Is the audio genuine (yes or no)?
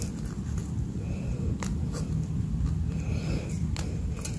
yes